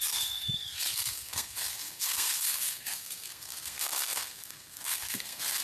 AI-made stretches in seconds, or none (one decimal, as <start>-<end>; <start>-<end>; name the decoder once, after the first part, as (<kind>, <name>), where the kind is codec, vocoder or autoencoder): 0.0-5.6 (codec, SNAC)